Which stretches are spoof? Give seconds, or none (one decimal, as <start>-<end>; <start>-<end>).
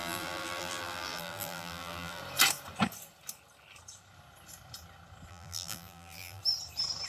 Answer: 0.0-2.2; 5.3-6.4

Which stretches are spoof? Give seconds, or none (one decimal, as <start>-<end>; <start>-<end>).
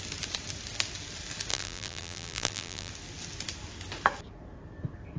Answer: 1.5-2.9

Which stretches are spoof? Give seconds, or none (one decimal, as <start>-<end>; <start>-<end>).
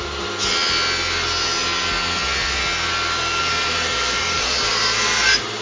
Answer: 3.5-5.6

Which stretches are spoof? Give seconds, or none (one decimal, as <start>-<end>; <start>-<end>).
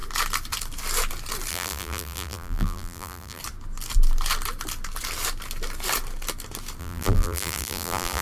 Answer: 1.5-3.4; 6.8-8.2